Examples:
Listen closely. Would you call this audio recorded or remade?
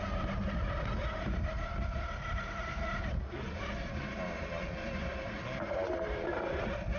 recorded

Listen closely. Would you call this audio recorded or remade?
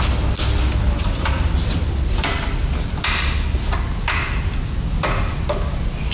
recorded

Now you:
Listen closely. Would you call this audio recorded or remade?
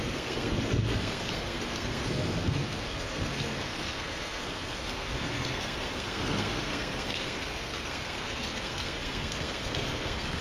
remade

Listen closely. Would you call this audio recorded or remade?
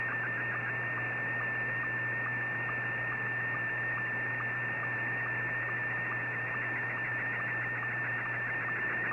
remade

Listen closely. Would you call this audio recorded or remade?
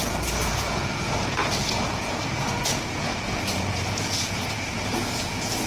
remade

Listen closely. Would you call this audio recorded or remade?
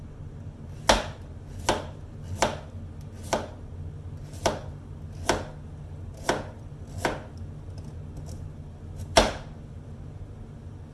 recorded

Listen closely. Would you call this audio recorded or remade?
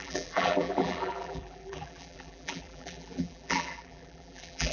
remade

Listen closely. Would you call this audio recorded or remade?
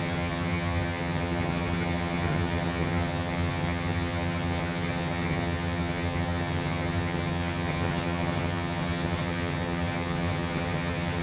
remade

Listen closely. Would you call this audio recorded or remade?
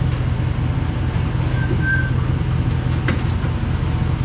recorded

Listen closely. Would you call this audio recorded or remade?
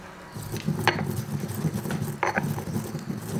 recorded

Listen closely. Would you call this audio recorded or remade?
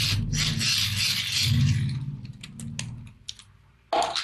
recorded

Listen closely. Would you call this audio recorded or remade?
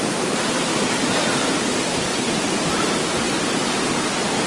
recorded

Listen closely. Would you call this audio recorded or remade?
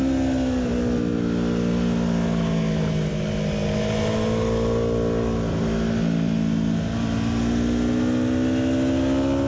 recorded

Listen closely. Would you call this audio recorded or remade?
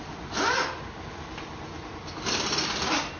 recorded